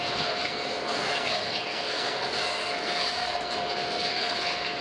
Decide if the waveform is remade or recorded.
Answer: remade